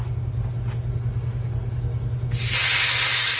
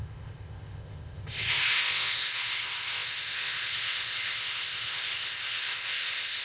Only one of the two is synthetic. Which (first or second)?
second